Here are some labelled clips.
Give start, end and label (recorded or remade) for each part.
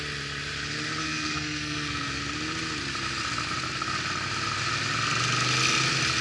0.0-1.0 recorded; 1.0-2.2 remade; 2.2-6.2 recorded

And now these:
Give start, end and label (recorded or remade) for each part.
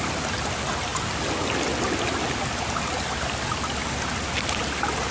0.0-5.1 recorded